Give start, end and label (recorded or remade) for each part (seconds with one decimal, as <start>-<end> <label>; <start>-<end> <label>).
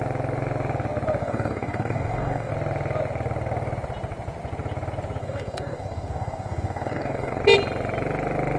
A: 0.0-1.2 recorded; 1.2-2.5 remade; 2.5-5.2 recorded; 5.2-7.4 remade; 7.4-8.6 recorded